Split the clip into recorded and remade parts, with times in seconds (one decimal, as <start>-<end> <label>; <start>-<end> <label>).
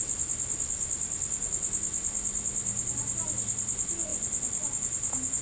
0.0-5.4 recorded